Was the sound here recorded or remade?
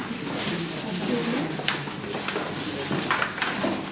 recorded